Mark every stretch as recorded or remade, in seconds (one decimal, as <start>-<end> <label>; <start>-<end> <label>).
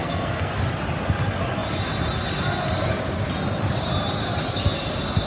0.0-0.5 remade; 0.5-5.3 recorded